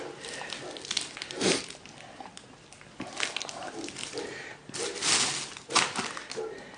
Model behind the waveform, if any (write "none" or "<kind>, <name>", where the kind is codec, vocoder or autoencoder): none